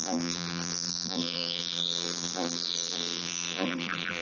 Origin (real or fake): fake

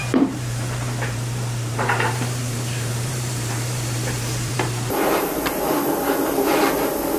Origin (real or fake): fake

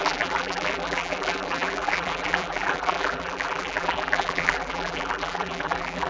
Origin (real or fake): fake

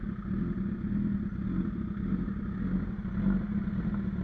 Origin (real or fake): real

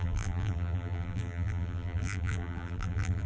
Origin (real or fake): fake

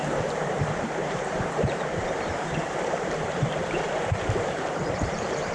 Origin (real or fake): fake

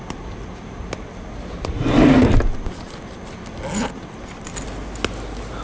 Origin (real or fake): real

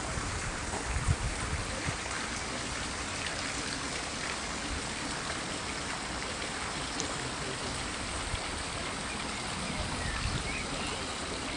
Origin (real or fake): fake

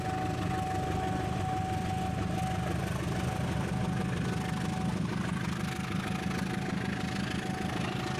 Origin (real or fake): real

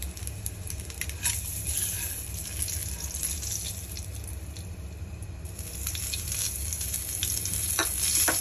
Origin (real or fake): real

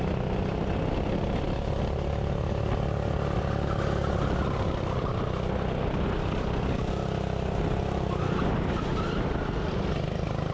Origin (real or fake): real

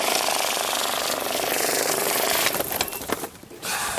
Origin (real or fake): fake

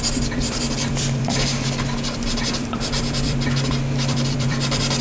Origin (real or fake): fake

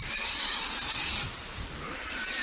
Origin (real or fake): fake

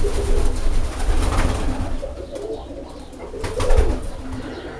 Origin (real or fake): real